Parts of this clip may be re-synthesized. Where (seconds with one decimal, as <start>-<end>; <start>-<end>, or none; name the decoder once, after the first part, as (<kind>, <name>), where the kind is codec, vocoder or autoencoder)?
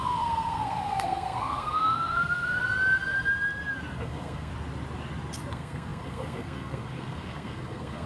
0.0-2.6 (codec, SNAC); 3.9-4.5; 5.5-8.1